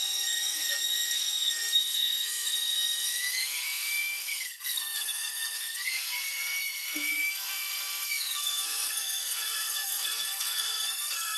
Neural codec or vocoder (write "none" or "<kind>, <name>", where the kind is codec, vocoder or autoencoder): codec, SNAC